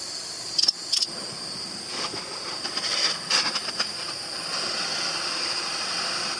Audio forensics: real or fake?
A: real